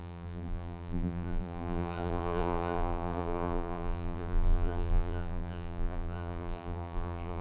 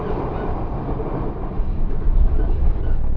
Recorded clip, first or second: second